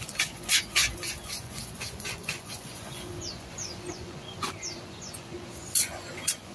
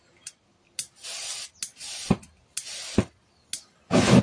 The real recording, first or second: second